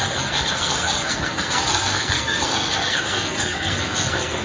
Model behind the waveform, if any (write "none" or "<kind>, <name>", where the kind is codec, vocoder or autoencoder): codec, SNAC